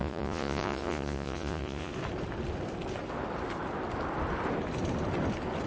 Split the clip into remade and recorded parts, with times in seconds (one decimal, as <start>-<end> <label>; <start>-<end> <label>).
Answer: 0.0-1.9 remade; 1.9-5.7 recorded

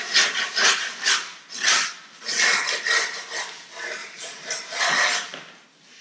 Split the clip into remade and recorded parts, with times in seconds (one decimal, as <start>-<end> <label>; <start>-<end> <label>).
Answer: 0.0-4.0 recorded; 4.0-4.8 remade; 4.8-6.0 recorded

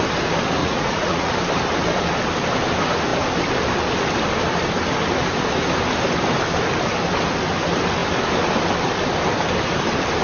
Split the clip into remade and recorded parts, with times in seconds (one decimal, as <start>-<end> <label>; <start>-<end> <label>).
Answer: 0.0-0.6 recorded; 0.6-1.3 remade; 1.3-10.2 recorded

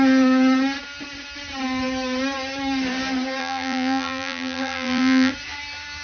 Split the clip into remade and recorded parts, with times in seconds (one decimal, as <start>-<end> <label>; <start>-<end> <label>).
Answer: 0.0-3.4 recorded; 3.4-5.3 remade; 5.3-6.0 recorded

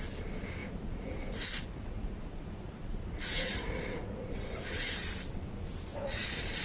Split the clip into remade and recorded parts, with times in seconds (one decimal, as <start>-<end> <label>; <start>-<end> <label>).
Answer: 0.0-0.6 recorded; 0.6-4.6 remade; 4.6-5.9 recorded; 5.9-6.6 remade

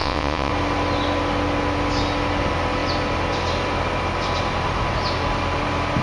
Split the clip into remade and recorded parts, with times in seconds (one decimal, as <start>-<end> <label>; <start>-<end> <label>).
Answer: 0.0-0.5 remade; 0.5-6.0 recorded

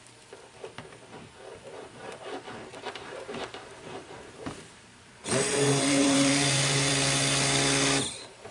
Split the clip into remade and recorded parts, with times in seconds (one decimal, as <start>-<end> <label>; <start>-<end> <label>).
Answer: 0.0-2.7 recorded; 2.7-6.9 remade; 6.9-8.5 recorded